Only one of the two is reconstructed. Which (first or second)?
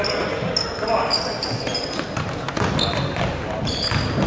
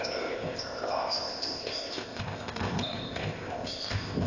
second